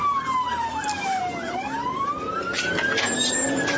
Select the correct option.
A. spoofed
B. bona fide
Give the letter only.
A